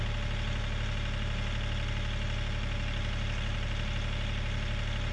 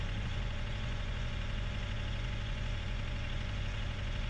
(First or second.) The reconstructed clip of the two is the second